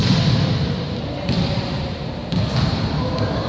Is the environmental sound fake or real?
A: fake